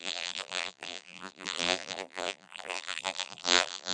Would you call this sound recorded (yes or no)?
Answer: no